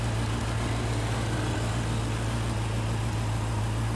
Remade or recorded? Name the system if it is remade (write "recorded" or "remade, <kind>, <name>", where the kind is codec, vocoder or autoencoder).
recorded